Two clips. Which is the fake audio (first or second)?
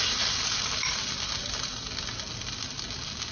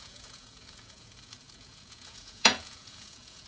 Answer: second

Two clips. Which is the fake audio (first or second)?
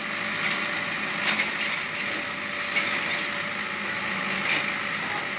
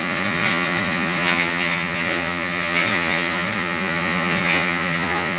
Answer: second